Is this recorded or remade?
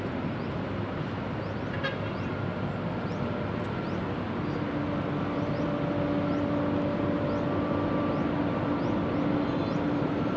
recorded